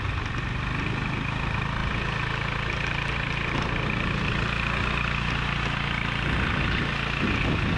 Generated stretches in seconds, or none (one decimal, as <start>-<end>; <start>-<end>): none

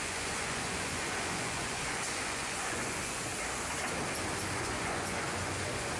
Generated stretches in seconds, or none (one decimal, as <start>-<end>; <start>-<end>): 0.0-3.3; 4.5-6.0

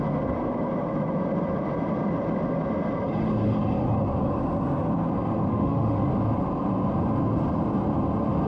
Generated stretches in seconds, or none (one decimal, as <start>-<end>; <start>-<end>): 5.5-6.1

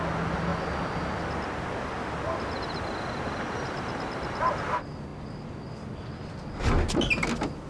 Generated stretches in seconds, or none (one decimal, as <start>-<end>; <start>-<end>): none

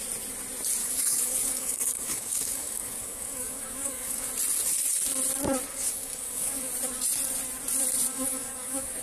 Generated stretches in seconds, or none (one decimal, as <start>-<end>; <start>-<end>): 0.8-4.3; 5.7-6.7; 8.1-9.0

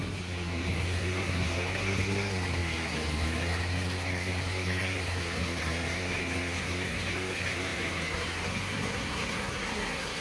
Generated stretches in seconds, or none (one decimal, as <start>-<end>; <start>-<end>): 0.0-10.2

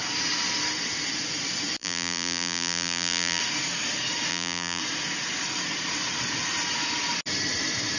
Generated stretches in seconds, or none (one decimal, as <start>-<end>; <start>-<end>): 1.8-3.4; 4.3-4.8

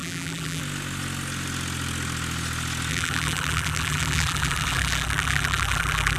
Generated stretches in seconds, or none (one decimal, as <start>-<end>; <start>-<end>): 0.0-0.6; 2.9-6.2